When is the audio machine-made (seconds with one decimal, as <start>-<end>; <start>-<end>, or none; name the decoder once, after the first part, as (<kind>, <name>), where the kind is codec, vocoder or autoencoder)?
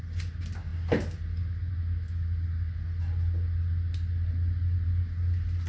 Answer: none